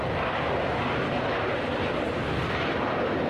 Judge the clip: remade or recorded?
recorded